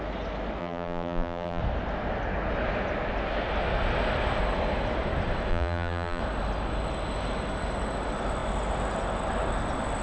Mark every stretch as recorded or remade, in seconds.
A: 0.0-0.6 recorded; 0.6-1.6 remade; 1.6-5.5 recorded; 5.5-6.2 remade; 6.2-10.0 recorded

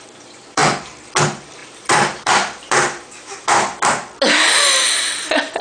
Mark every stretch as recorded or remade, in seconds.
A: 0.0-0.6 remade; 0.6-1.2 recorded; 1.2-3.7 remade; 3.7-5.6 recorded

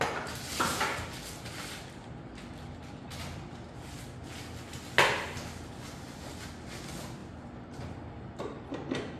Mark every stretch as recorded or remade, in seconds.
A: 0.0-9.2 recorded

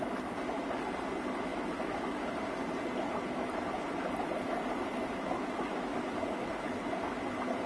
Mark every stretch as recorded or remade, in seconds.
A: 0.0-1.5 recorded; 1.5-2.3 remade; 2.3-5.0 recorded; 5.0-6.9 remade; 6.9-7.7 recorded

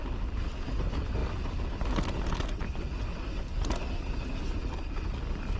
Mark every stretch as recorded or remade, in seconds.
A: 0.0-5.6 recorded